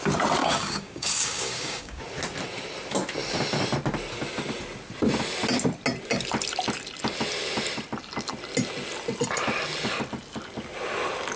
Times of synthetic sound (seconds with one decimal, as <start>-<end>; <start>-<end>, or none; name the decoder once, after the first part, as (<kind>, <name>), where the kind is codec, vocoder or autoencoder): 0.4-2.0 (codec, DAC)